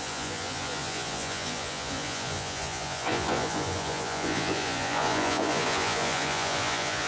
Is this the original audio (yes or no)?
no